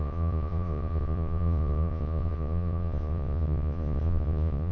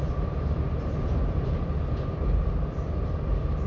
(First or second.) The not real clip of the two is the first